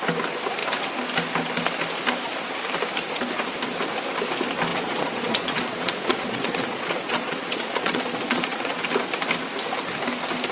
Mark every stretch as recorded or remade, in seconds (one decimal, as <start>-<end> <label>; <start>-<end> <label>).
0.0-4.7 recorded; 4.7-8.8 remade; 8.8-10.5 recorded